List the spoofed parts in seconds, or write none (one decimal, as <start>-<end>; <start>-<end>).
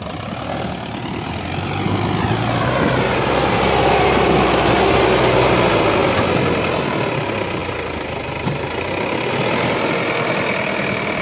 none